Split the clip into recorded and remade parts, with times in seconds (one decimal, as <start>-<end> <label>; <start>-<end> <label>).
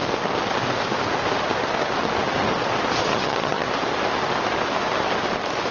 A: 0.0-3.1 recorded; 3.1-3.7 remade; 3.7-5.7 recorded